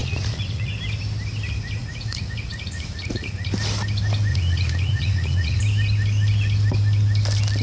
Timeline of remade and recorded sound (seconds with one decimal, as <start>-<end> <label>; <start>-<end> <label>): 0.0-0.7 remade; 0.7-1.8 recorded; 1.8-3.5 remade; 3.5-4.3 recorded; 4.3-5.6 remade; 5.6-7.6 recorded